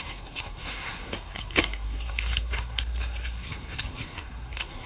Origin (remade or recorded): remade